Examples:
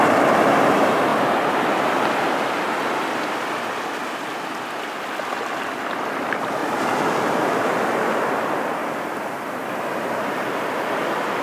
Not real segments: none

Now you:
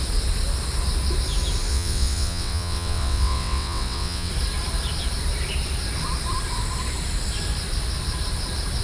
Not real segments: 1.7-4.3

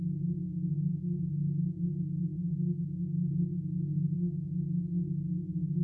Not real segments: 0.9-3.3

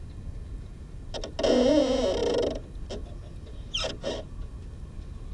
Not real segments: none